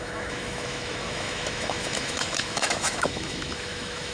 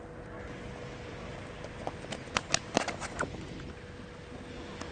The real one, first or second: second